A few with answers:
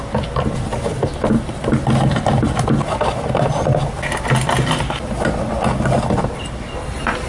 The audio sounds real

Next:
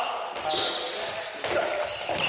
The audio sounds real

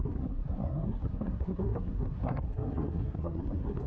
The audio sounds fake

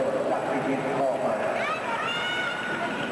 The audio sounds real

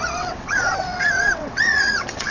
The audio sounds fake